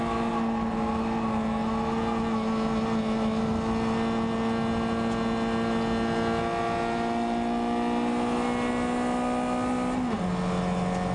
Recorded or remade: recorded